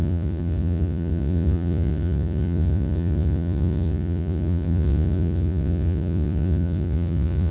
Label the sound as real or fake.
fake